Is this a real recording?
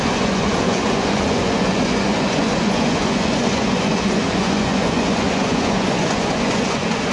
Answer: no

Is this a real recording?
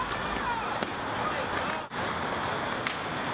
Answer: yes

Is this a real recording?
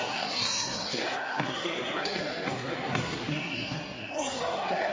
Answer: no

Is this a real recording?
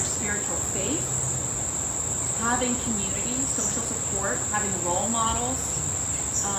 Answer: yes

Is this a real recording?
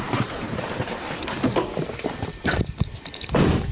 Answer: no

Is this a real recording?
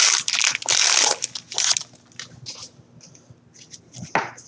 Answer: yes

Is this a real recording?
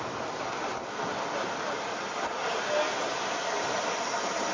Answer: no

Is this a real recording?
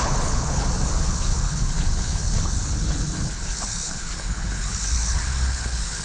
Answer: no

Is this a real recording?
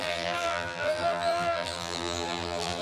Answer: no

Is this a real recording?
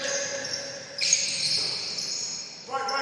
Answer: yes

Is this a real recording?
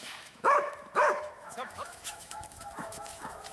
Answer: no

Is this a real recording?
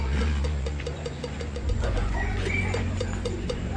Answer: no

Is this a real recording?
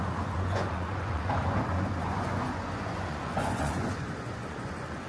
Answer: no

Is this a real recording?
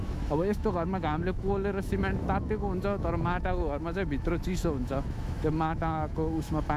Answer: no